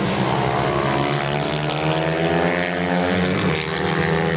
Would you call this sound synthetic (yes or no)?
no